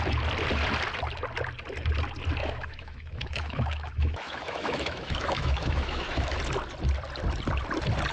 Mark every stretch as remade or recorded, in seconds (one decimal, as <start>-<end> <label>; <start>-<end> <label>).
0.0-2.4 recorded; 2.4-6.4 remade; 6.4-8.1 recorded